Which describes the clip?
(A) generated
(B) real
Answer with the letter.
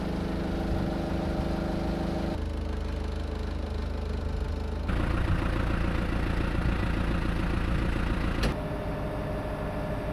B